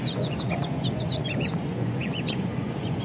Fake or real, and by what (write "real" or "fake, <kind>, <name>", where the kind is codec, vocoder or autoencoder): fake, vocoder, Vocos